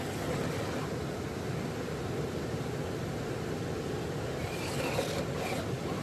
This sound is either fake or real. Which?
real